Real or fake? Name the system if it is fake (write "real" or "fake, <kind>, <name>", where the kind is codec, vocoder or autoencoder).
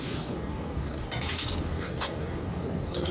fake, codec, DAC